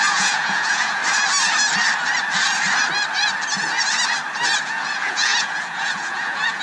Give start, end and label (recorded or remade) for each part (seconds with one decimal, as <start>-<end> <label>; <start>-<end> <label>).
0.0-1.0 remade; 1.0-4.6 recorded; 4.6-6.6 remade